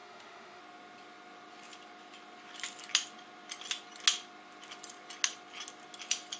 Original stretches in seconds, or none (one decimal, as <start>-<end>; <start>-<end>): 0.6-6.4